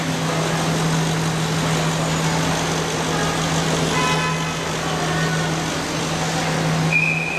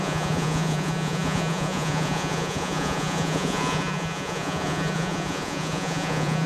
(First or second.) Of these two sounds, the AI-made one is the second